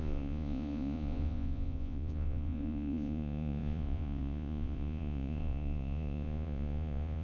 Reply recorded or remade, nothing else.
remade